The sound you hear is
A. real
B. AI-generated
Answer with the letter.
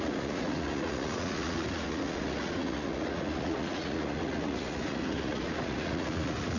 B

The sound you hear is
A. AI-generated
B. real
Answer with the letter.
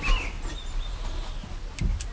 B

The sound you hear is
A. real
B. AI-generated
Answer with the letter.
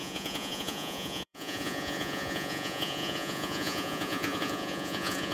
B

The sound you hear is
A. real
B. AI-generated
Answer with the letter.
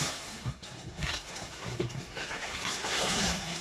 B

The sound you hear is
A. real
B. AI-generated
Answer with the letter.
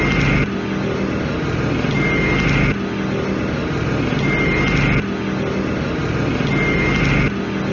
A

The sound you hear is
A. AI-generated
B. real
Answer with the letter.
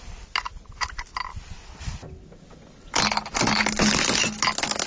B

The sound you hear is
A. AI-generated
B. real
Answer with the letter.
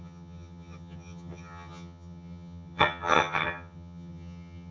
A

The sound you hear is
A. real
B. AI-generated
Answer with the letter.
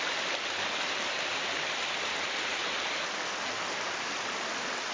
B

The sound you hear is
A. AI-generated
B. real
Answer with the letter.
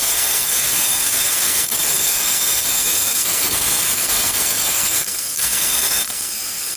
A